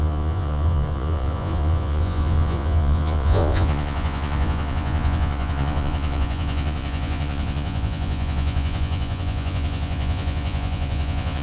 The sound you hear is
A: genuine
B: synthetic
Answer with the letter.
B